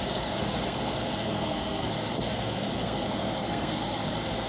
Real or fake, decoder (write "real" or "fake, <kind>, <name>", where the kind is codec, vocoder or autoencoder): fake, codec, SNAC